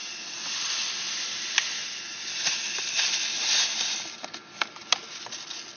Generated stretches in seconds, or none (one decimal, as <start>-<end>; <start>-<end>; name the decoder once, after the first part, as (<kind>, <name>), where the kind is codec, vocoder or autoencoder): none